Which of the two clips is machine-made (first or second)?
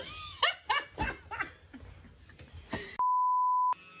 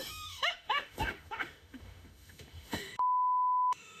second